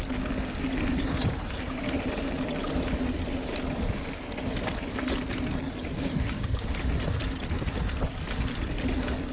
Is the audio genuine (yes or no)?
yes